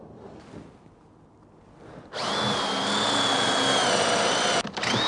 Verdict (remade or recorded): recorded